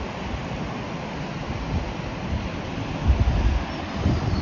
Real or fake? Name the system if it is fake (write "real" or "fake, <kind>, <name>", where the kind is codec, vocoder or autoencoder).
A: real